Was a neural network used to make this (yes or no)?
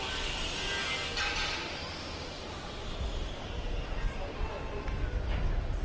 no